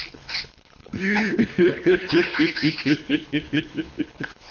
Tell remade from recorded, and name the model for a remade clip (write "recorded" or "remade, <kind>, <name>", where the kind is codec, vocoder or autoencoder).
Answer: remade, codec, HILCodec